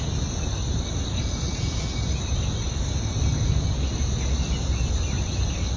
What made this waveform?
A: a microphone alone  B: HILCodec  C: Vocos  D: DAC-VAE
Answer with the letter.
A